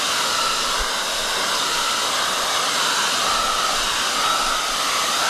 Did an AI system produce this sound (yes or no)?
no